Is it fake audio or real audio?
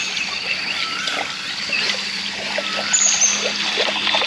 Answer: real